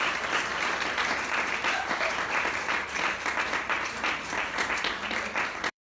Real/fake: fake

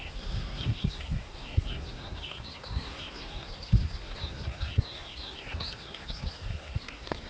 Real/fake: fake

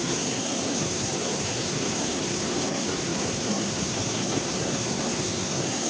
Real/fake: fake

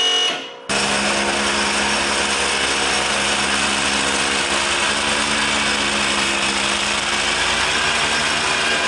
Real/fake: real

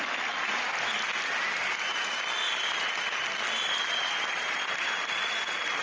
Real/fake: real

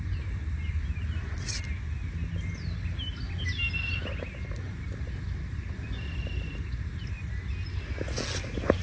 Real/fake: real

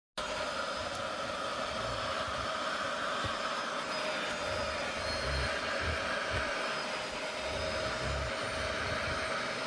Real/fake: real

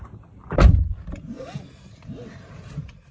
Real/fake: real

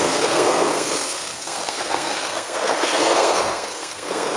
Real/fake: fake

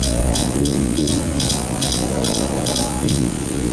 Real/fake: fake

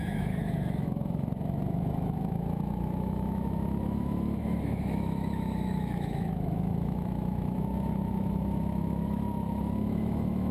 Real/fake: fake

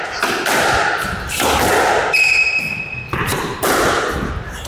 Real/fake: real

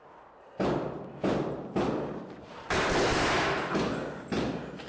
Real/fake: real